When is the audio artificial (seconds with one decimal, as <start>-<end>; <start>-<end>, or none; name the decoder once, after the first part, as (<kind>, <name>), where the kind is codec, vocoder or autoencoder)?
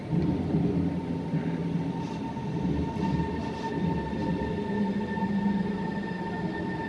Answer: none